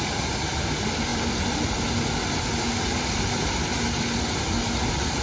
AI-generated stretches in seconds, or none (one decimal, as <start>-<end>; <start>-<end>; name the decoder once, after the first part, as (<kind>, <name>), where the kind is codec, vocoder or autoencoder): none